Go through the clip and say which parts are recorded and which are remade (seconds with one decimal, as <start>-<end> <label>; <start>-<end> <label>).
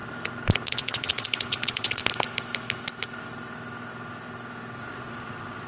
0.0-0.7 recorded; 0.7-2.0 remade; 2.0-4.8 recorded; 4.8-5.7 remade